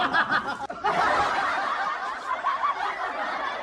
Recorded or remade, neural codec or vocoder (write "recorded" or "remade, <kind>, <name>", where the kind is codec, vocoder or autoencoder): recorded